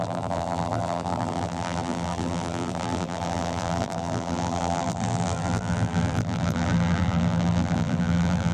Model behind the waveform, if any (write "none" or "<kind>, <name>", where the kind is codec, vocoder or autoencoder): vocoder, BigVGAN v2